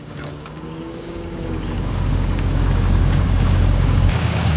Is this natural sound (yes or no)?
no